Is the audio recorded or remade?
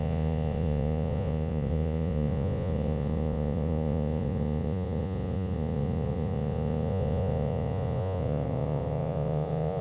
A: remade